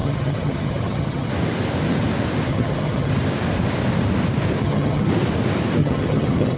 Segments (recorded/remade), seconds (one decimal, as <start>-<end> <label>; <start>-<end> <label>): 0.0-1.3 remade; 1.3-2.5 recorded; 2.5-3.1 remade; 3.1-4.6 recorded; 4.6-5.1 remade; 5.1-5.8 recorded; 5.8-6.6 remade

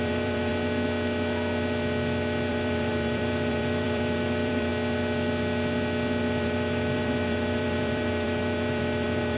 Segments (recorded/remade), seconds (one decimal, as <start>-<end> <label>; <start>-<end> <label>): 0.0-0.5 remade; 0.5-2.5 recorded; 2.5-4.7 remade; 4.7-6.2 recorded; 6.2-9.4 remade

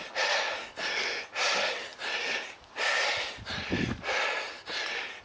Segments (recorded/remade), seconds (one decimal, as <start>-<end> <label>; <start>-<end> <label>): 0.0-5.2 recorded

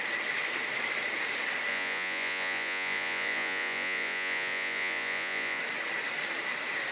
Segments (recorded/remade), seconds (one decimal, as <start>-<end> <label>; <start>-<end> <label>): 0.0-1.7 recorded; 1.7-5.6 remade; 5.6-6.9 recorded

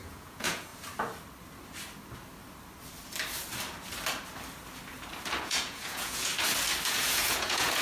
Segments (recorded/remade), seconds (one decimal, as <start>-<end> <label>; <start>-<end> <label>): 0.0-0.7 remade; 0.7-5.4 recorded; 5.4-6.3 remade; 6.3-6.9 recorded; 6.9-7.8 remade